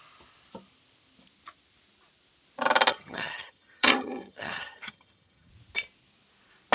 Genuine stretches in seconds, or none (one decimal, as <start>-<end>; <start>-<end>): 0.0-2.9; 5.5-6.7